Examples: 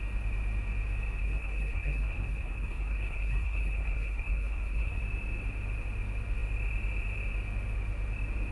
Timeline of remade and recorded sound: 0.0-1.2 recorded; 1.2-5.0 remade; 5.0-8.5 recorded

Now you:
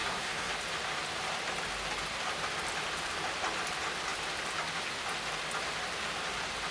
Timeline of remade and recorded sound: 0.0-0.5 remade; 0.5-6.7 recorded

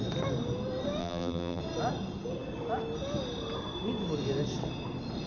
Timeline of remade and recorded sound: 0.0-1.0 recorded; 1.0-1.6 remade; 1.6-5.3 recorded

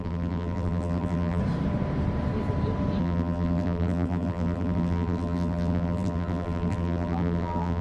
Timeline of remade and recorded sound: 0.0-1.4 remade; 1.4-3.0 recorded; 3.0-7.8 remade

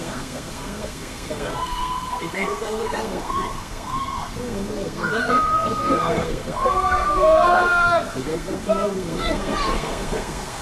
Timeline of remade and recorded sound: 0.0-10.6 remade

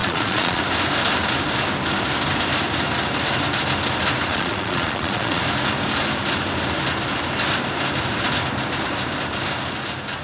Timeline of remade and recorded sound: 0.0-0.6 remade; 0.6-4.3 recorded; 4.3-5.4 remade; 5.4-10.2 recorded

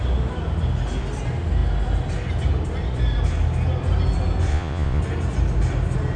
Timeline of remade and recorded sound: 0.0-4.5 recorded; 4.5-5.0 remade; 5.0-6.2 recorded

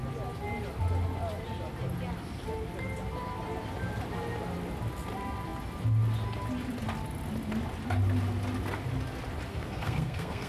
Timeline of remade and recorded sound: 0.0-9.5 recorded; 9.5-10.5 remade